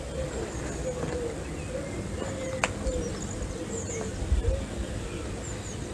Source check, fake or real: real